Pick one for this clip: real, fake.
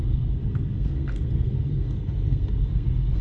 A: fake